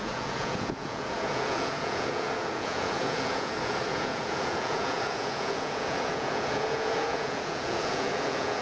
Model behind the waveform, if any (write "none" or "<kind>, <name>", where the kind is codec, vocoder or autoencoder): vocoder, Vocos